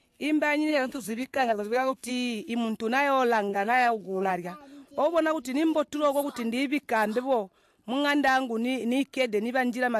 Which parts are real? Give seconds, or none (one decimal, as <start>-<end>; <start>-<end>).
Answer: 0.0-0.7; 2.1-3.5; 4.3-10.0